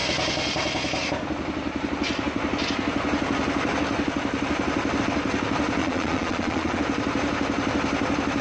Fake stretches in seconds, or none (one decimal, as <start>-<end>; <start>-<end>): 5.8-6.8